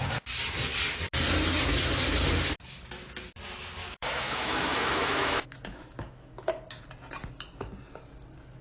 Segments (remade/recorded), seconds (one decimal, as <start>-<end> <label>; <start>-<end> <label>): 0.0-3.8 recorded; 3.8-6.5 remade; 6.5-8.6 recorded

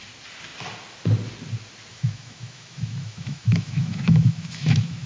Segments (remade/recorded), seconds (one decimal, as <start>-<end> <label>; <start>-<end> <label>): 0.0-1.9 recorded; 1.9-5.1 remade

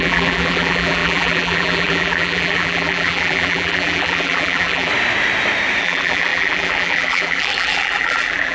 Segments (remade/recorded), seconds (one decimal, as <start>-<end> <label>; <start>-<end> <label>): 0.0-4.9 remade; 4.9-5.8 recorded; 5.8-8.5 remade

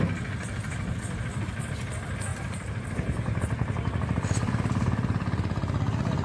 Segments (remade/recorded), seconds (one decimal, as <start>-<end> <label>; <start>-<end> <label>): 0.0-2.3 recorded; 2.3-3.4 remade; 3.4-6.2 recorded